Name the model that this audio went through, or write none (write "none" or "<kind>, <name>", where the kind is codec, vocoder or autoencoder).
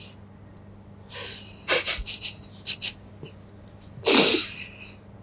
none